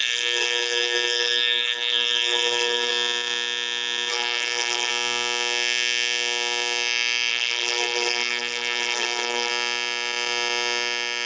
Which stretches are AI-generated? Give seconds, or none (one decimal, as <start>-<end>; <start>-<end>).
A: 0.0-2.9; 4.1-4.9; 7.3-9.5